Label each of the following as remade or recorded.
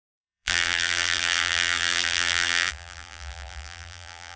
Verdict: remade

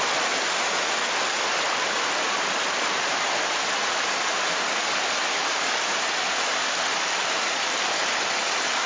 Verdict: recorded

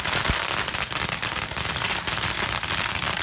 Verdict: recorded